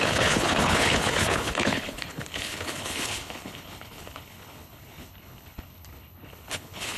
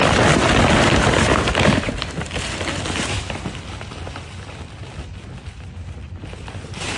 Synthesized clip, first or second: first